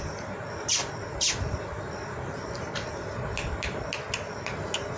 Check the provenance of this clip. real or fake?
real